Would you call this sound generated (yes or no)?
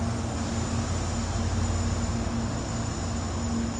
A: no